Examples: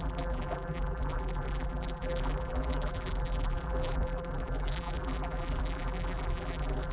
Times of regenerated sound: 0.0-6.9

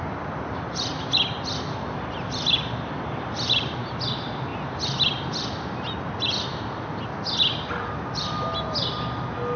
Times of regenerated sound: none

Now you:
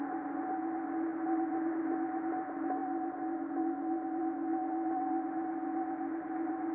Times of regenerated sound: none

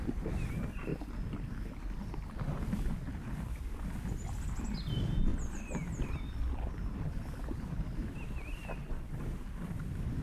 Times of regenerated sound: none

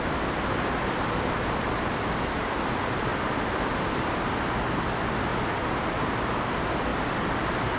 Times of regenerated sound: 6.9-7.8

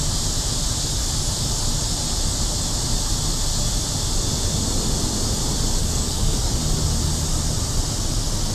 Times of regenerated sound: 5.8-6.6

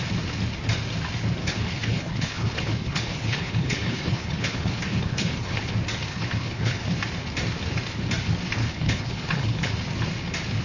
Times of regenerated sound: 1.4-5.6; 6.1-6.9; 8.6-9.7